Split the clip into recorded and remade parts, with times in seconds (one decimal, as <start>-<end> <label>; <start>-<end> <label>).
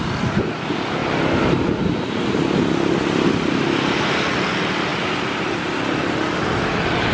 0.0-7.1 recorded